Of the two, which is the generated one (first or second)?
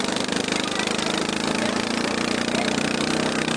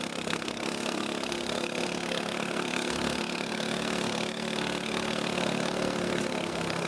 second